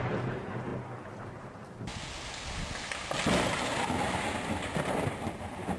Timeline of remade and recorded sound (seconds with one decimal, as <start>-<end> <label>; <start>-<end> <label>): 0.0-0.7 remade; 0.7-1.2 recorded; 1.2-1.9 remade; 1.9-4.5 recorded; 4.5-5.8 remade

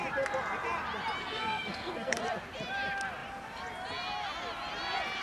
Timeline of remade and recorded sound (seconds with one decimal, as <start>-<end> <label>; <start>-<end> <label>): 0.0-1.2 recorded; 1.2-2.2 remade; 2.2-5.2 recorded

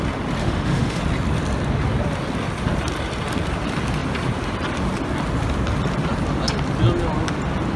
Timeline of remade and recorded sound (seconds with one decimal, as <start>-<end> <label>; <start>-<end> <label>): 0.0-0.4 recorded; 0.4-1.0 remade; 1.0-7.8 recorded

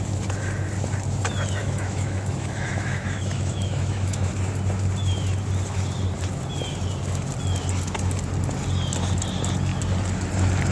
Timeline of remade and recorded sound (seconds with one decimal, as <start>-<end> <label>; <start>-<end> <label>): 0.0-1.6 recorded; 1.6-4.3 remade; 4.3-10.7 recorded